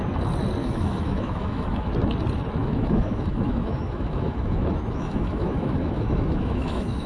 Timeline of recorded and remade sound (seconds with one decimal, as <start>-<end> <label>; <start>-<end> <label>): 0.0-0.6 recorded; 0.6-1.9 remade; 1.9-2.6 recorded; 2.6-7.1 remade